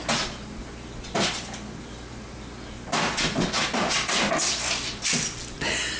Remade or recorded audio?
recorded